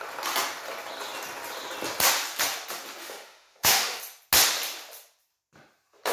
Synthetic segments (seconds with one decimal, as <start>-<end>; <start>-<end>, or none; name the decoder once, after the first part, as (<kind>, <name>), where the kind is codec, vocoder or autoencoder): 3.0-4.0 (autoencoder, DAC-VAE)